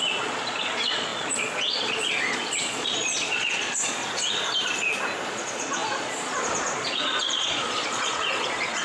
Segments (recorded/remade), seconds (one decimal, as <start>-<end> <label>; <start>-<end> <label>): 0.0-4.0 remade; 4.0-5.3 recorded; 5.3-8.8 remade